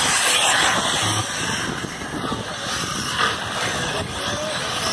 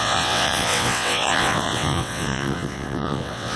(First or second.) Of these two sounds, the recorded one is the first